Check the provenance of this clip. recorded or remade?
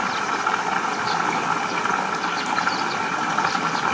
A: recorded